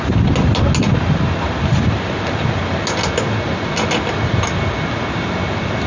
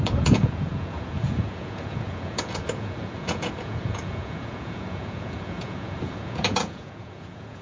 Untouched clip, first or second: first